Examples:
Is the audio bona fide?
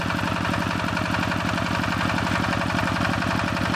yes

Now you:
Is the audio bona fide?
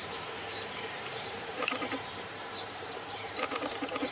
no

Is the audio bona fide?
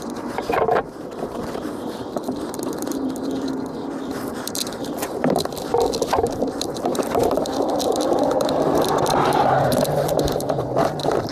no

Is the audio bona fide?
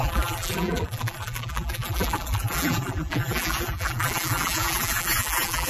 no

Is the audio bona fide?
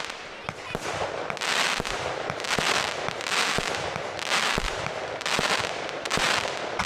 no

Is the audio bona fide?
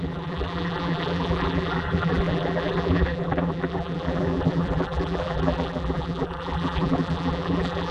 no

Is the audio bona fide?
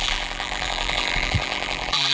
no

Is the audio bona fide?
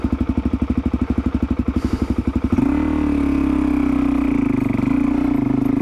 yes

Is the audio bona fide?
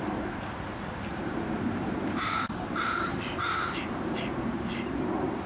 no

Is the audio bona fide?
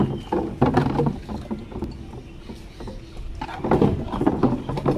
yes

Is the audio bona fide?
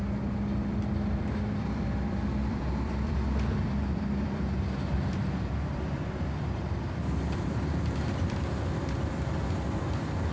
no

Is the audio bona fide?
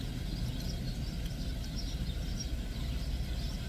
yes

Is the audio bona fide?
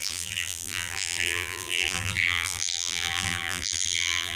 no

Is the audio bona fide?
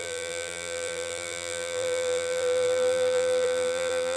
no